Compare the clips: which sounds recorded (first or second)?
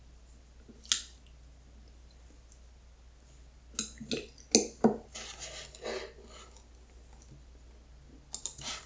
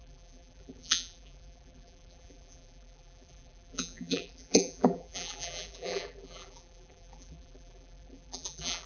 first